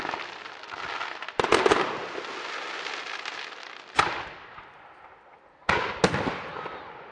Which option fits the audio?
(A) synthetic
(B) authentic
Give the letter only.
B